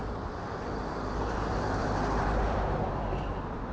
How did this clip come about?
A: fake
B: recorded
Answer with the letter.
A